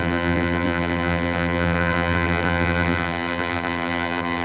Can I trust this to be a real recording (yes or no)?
no